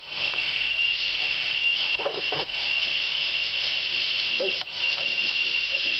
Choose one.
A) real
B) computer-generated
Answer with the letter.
B